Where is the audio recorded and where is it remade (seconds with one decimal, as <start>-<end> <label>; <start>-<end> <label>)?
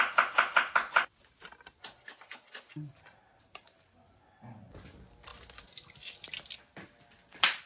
0.0-7.7 recorded